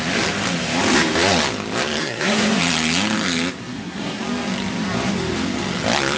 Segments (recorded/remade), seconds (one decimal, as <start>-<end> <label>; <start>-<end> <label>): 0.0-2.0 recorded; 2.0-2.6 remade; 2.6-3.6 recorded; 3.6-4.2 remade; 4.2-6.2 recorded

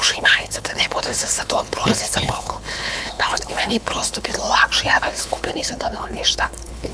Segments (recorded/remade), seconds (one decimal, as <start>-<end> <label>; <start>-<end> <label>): 0.0-4.3 remade; 4.3-5.0 recorded; 5.0-6.9 remade

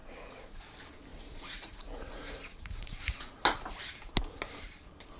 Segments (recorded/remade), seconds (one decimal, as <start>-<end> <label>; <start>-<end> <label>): 0.0-0.6 remade; 0.6-1.1 recorded; 1.1-3.4 remade; 3.4-5.2 recorded

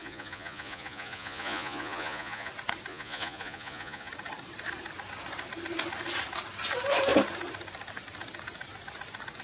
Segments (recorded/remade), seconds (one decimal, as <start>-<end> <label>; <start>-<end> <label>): 0.0-2.5 remade; 2.5-2.9 recorded; 2.9-4.1 remade; 4.1-9.4 recorded

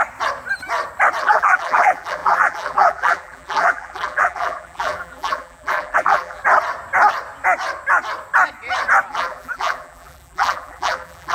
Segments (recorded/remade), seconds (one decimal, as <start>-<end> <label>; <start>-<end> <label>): 0.0-1.2 recorded; 1.2-6.4 remade; 6.4-9.1 recorded; 9.1-11.3 remade

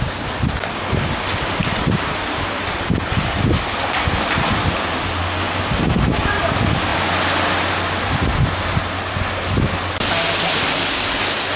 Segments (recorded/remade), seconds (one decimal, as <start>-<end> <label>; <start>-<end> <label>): 0.0-11.6 recorded

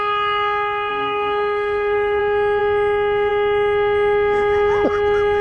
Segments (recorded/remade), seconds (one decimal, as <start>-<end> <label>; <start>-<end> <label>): 0.0-0.9 recorded; 0.9-2.2 remade; 2.2-5.4 recorded

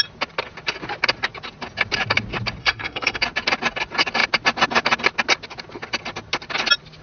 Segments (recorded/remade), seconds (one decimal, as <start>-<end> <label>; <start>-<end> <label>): 0.0-2.6 recorded; 2.6-3.2 remade; 3.2-7.0 recorded